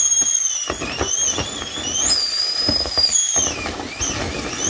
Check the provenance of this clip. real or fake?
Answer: real